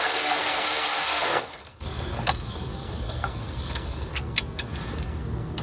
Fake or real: fake